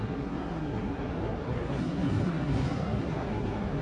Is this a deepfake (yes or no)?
yes